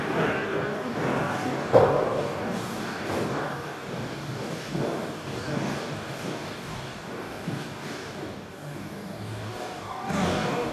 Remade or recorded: remade